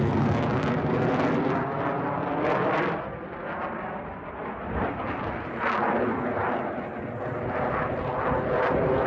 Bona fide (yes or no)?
yes